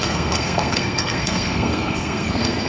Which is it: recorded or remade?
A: remade